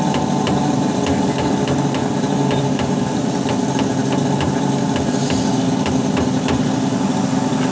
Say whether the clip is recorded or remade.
recorded